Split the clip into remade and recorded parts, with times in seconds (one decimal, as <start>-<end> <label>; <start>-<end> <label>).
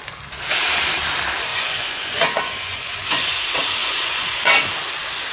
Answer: 0.0-1.5 recorded; 1.5-3.4 remade; 3.4-3.8 recorded; 3.8-4.6 remade; 4.6-5.3 recorded